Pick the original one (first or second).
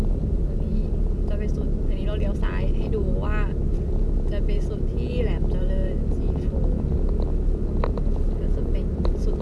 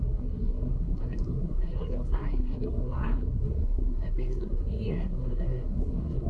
first